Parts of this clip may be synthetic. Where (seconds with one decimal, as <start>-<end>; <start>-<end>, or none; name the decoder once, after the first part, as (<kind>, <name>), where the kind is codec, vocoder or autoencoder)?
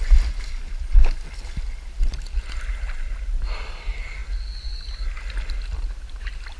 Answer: none